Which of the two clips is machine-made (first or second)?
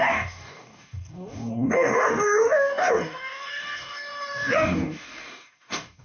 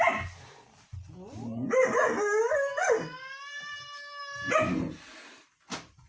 first